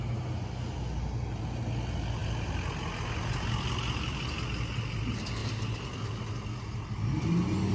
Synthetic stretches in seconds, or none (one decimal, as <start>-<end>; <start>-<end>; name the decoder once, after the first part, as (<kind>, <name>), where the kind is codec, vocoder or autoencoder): none